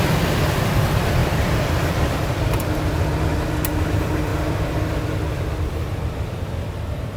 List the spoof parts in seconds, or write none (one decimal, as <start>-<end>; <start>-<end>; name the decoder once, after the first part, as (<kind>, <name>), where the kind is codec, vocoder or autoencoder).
0.0-3.1 (vocoder, BigVGAN v2); 3.7-7.2